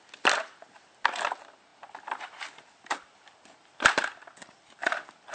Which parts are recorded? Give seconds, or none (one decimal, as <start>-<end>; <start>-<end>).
0.0-1.7